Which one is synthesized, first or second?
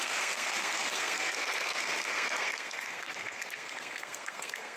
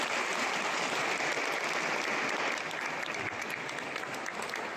first